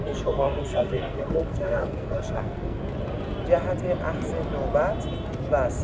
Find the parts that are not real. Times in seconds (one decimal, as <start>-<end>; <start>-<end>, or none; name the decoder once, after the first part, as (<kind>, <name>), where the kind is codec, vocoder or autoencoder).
0.0-2.8 (codec, SNAC)